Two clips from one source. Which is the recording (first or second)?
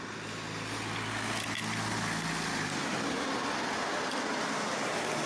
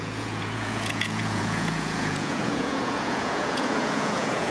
first